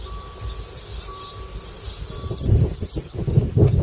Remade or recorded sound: recorded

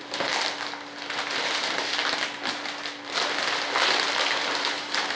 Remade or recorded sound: recorded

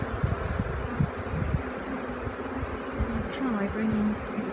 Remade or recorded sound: recorded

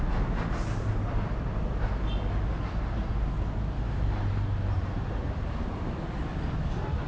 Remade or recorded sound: recorded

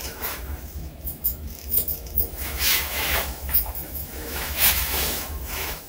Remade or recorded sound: remade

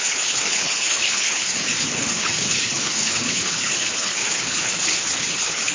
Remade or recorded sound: remade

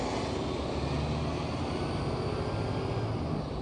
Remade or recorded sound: recorded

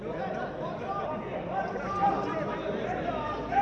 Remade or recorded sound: remade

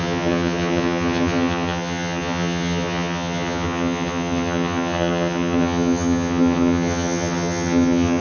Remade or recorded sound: remade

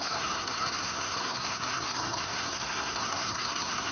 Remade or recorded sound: remade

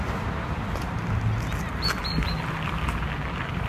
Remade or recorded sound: recorded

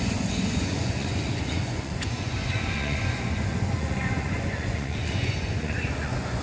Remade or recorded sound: remade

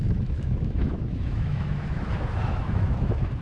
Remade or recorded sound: remade